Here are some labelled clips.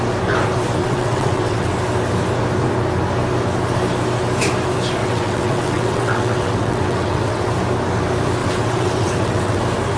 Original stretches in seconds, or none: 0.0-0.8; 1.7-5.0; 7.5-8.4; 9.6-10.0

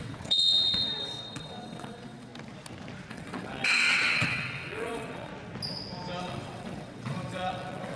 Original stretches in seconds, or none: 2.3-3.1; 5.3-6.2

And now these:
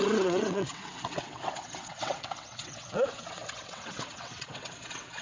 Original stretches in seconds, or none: none

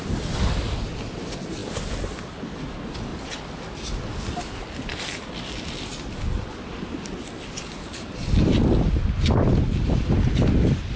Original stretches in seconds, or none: 0.0-11.0

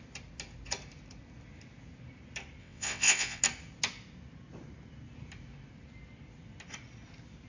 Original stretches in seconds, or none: 0.0-2.6; 3.4-7.5

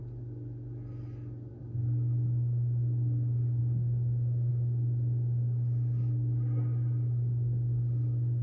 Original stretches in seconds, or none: 0.0-8.4

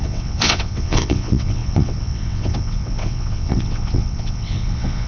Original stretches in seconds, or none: none

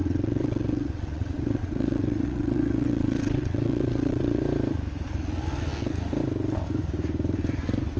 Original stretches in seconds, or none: 4.4-8.0